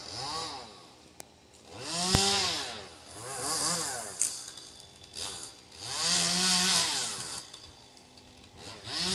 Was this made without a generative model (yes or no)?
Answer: yes